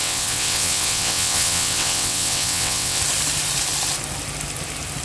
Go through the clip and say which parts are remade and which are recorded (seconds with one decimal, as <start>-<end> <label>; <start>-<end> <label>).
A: 0.0-3.0 remade; 3.0-5.0 recorded